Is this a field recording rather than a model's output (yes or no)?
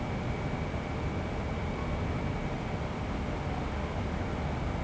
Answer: yes